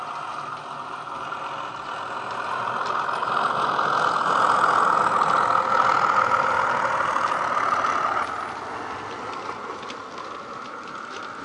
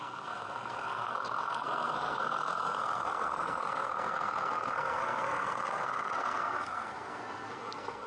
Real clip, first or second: first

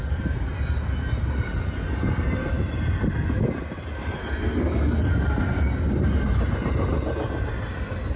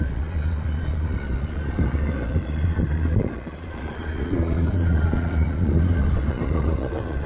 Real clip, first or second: first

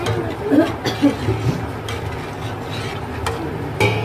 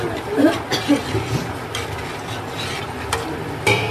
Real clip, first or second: first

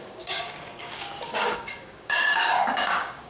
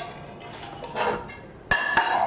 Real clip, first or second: second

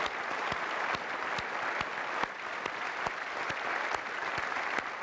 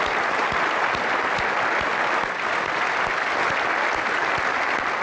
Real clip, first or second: second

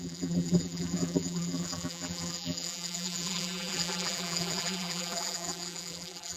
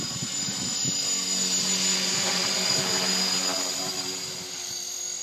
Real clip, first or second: second